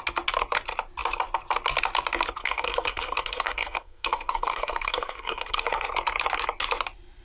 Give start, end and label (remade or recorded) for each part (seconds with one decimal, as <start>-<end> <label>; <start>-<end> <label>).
0.0-2.4 recorded; 2.4-5.9 remade; 5.9-7.2 recorded